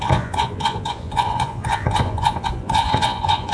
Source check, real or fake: fake